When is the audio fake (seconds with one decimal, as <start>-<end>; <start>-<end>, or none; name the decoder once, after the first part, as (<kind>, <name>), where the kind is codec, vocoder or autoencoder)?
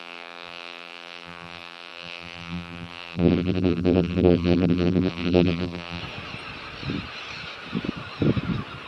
0.0-6.0 (vocoder, BigVGAN v2)